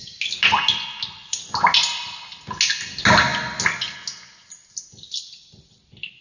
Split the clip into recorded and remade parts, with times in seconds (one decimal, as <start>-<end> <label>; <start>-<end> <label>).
0.0-6.2 recorded

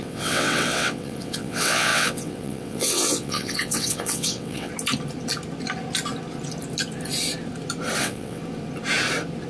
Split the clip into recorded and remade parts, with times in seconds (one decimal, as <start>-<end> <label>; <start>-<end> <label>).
0.0-4.7 remade; 4.7-8.0 recorded; 8.0-8.4 remade; 8.4-9.5 recorded

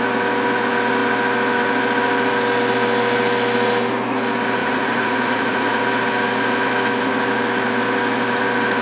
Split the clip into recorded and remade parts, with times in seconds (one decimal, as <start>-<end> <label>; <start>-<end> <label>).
0.0-4.6 recorded; 4.6-5.8 remade; 5.8-8.8 recorded

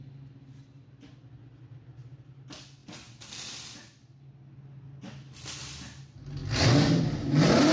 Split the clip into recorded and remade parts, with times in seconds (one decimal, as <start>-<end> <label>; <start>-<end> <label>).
0.0-7.7 recorded

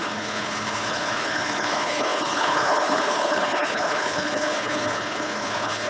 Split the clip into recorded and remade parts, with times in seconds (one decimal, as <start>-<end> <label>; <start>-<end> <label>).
0.0-5.9 remade

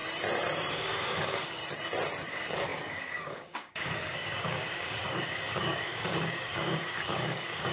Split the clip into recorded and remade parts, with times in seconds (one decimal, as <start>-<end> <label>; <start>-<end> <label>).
0.0-0.7 recorded; 0.7-1.6 remade; 1.6-2.3 recorded; 2.3-7.7 remade

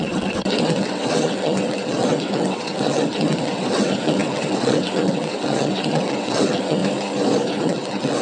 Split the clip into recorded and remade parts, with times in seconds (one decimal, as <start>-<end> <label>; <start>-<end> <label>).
0.0-6.8 remade; 6.8-7.6 recorded; 7.6-8.2 remade